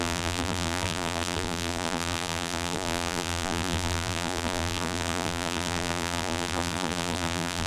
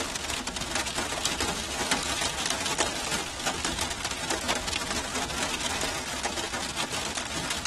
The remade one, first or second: first